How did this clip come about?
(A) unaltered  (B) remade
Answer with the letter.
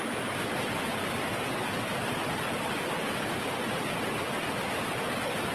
A